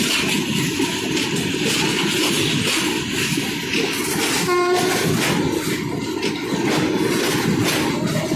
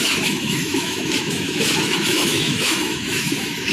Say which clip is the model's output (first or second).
second